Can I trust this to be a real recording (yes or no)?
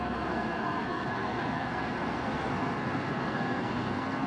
no